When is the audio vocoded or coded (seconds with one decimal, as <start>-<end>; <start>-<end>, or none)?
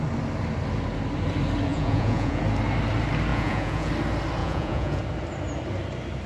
1.7-2.4; 3.3-3.9; 4.4-5.0